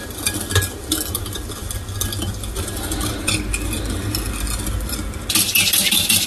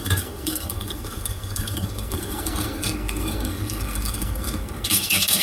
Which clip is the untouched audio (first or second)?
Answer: first